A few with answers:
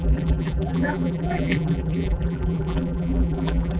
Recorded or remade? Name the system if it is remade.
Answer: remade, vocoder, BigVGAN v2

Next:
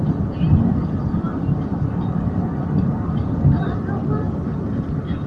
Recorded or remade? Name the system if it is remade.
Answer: recorded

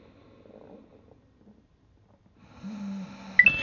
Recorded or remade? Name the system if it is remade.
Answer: recorded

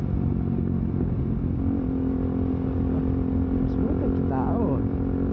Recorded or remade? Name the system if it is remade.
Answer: recorded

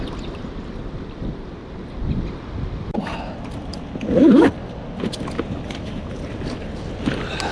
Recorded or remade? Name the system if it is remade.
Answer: recorded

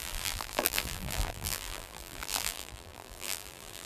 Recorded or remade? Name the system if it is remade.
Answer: remade, vocoder, BigVGAN v2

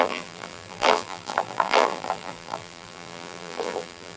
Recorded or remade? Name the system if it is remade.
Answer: remade, vocoder, BigVGAN v2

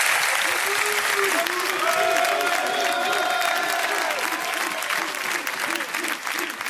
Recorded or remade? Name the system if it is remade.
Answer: recorded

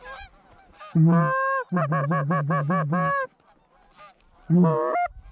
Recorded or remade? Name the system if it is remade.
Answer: recorded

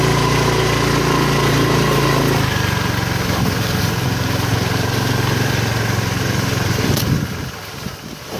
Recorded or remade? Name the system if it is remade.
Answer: recorded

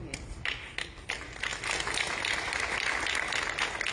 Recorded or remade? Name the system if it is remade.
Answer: recorded